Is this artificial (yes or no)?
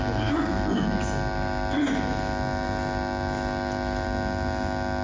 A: no